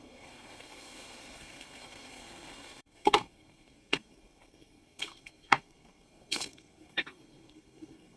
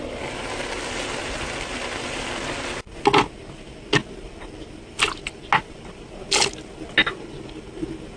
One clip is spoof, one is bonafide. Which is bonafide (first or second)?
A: second